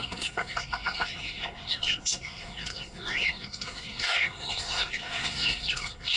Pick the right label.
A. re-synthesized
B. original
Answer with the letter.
A